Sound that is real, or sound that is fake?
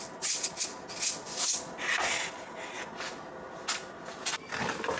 real